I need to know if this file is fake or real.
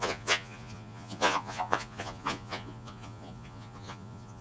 fake